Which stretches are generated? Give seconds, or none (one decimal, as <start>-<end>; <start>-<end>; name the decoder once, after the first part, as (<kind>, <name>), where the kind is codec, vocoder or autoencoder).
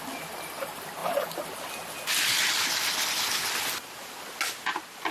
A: none